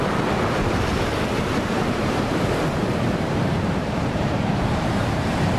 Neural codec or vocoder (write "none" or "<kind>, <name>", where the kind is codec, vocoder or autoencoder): vocoder, BigVGAN v2